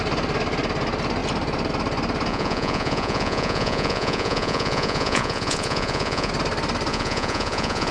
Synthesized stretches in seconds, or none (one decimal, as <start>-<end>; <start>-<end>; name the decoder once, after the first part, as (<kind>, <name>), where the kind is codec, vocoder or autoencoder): 2.3-6.3 (vocoder, Vocos); 6.9-7.9